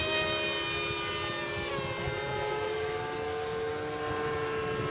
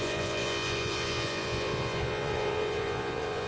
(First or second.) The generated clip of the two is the second